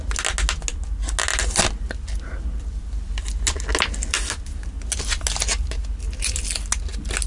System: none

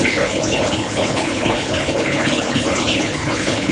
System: codec, HILCodec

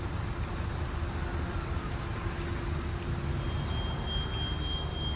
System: none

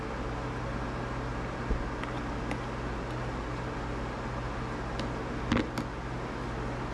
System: none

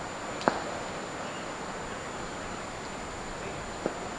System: none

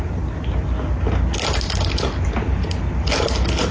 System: none